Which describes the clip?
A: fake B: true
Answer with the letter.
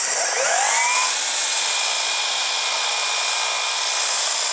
B